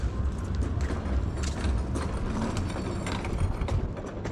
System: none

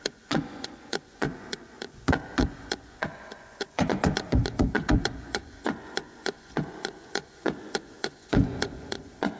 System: vocoder, Vocos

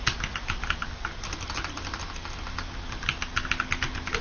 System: none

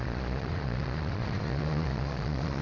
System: vocoder, Vocos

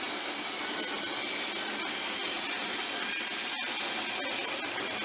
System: none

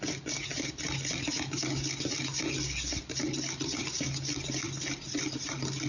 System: none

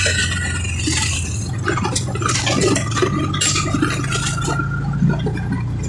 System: none